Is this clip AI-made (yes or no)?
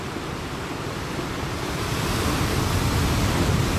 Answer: no